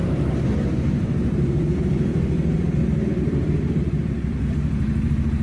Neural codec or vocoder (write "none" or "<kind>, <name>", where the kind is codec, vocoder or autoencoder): vocoder, BigVGAN v2